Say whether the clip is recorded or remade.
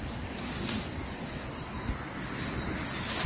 recorded